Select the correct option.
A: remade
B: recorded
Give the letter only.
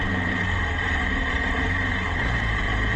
A